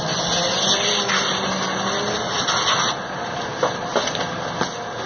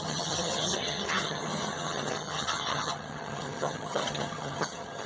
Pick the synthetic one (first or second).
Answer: second